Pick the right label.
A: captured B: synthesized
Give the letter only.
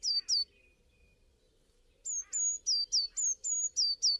A